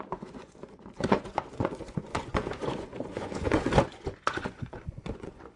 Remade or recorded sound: remade